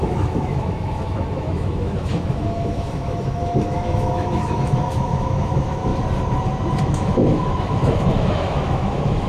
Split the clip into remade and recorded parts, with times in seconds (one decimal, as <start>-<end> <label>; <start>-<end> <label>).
0.0-5.9 remade; 5.9-6.8 recorded; 6.8-9.3 remade